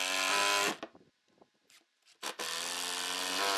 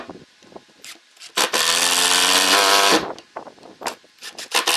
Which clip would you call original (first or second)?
first